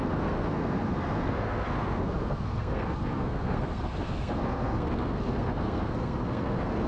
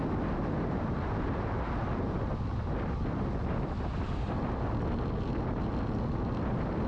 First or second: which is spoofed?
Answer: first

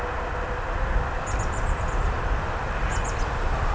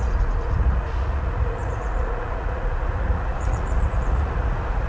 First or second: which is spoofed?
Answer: second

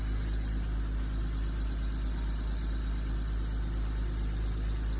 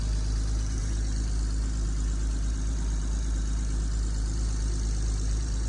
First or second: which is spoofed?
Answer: second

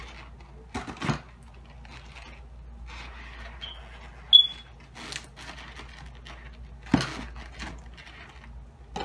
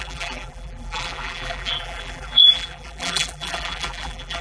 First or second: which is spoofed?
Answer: second